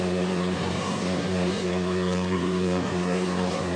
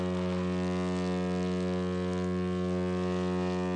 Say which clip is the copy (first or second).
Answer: first